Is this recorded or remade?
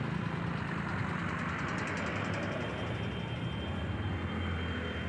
recorded